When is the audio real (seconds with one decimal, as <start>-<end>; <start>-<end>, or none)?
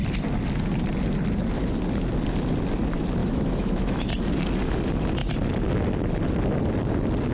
0.0-3.2; 4.1-7.3